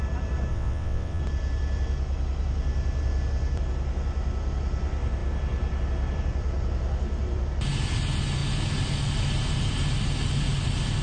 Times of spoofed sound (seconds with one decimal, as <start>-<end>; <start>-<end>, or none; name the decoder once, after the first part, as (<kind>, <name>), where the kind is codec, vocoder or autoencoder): 0.5-1.2 (vocoder, WaveNeXt)

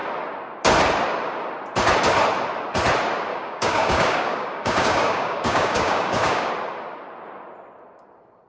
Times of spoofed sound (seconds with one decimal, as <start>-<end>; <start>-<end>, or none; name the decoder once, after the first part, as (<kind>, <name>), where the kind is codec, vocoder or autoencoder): 3.3-6.5 (codec, DAC)

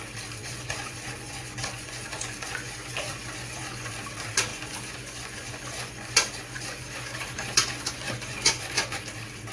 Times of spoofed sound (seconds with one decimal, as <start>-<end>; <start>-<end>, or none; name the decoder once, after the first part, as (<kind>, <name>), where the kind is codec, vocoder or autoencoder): 0.4-3.9 (vocoder, Vocos); 4.5-9.0

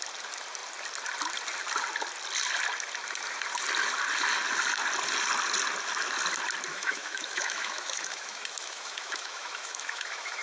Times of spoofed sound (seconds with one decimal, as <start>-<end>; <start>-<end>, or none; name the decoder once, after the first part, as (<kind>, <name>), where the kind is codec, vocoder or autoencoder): 6.7-10.4 (autoencoder, DAC-VAE)